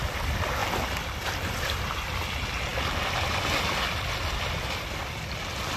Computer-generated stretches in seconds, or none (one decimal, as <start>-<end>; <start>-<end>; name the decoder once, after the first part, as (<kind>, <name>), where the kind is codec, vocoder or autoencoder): none